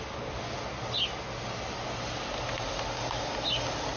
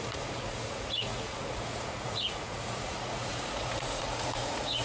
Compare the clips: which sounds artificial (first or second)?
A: second